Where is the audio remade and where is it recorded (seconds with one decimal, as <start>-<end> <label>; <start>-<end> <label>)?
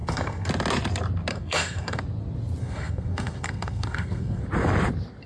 0.0-0.5 remade; 0.5-1.3 recorded; 1.3-2.0 remade; 2.0-2.6 recorded; 2.6-4.4 remade; 4.4-5.3 recorded